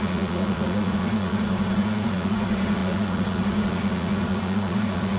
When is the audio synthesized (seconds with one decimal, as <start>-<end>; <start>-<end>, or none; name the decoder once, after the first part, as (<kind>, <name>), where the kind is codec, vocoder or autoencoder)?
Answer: 0.0-5.2 (vocoder, Vocos)